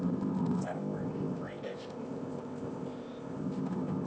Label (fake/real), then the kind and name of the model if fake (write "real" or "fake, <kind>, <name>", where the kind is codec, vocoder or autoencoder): fake, codec, ZipCodec